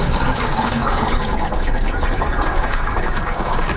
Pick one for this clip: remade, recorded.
remade